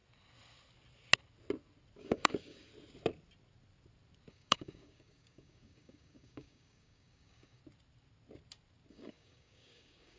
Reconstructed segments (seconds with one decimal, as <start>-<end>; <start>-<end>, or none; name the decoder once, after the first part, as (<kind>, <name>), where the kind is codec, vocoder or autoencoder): 2.0-2.7 (codec, DAC); 4.3-7.6; 8.9-10.2